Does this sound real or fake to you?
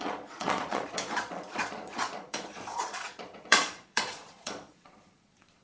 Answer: fake